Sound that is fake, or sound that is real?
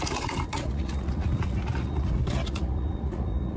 fake